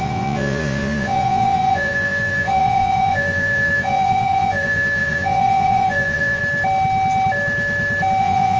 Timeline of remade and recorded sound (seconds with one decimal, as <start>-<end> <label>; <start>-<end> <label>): 0.0-6.4 remade; 6.4-8.2 recorded; 8.2-8.6 remade